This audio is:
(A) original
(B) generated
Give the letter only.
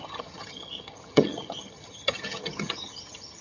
B